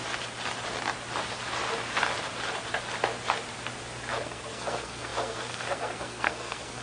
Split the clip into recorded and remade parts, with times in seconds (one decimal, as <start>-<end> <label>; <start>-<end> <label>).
0.0-4.1 recorded; 4.1-6.8 remade